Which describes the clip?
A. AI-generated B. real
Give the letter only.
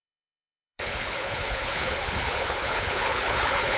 A